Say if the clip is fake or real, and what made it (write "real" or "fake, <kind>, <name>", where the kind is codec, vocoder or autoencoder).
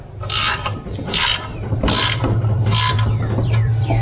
fake, vocoder, BigVGAN v2